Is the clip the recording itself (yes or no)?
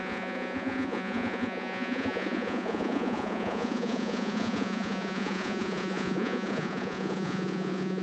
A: no